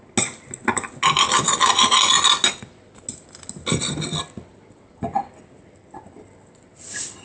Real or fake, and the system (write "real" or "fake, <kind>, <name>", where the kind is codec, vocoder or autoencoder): real